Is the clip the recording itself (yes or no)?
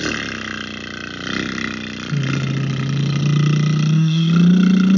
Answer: yes